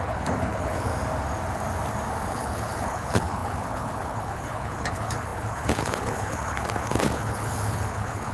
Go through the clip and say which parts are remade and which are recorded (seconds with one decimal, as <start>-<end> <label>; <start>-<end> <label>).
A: 0.0-0.9 remade; 0.9-2.3 recorded; 2.3-8.3 remade